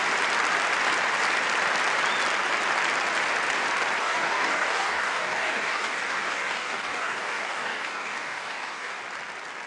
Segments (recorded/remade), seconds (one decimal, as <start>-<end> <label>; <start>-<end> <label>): 0.0-4.0 recorded; 4.0-9.0 remade; 9.0-9.7 recorded